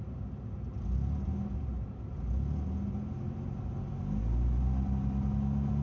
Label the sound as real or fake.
real